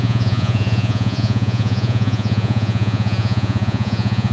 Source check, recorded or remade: remade